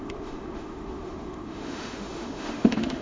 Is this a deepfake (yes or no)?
yes